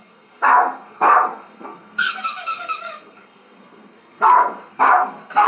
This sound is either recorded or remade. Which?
remade